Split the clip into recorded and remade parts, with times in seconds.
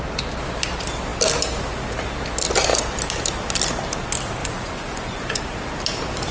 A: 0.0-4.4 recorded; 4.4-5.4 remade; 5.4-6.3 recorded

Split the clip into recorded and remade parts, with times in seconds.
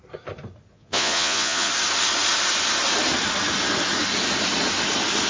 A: 0.0-0.7 recorded; 0.7-1.7 remade; 1.7-5.3 recorded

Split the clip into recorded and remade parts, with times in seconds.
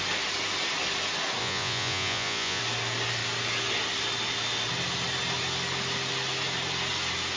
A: 0.0-1.4 recorded; 1.4-2.6 remade; 2.6-7.4 recorded